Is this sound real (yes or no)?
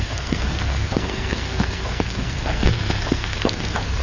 no